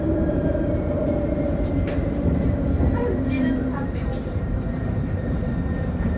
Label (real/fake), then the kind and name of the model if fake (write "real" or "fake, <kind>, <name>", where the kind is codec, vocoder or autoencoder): fake, vocoder, BigVGAN v2